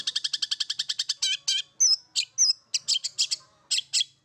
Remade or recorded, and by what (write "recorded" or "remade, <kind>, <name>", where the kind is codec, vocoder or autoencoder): recorded